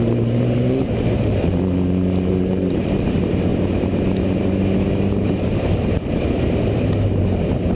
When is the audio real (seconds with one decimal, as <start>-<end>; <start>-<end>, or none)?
3.5-4.9

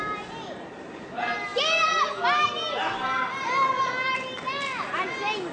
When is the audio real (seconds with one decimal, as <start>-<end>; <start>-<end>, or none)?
0.0-5.5

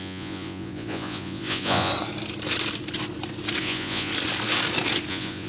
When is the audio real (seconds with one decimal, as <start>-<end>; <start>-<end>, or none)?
1.9-3.6; 4.1-5.1

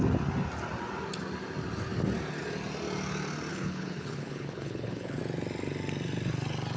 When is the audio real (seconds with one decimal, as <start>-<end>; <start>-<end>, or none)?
0.0-3.5; 5.2-6.8

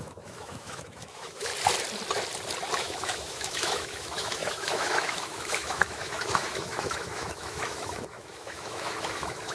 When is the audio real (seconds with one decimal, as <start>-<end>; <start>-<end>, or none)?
1.5-2.8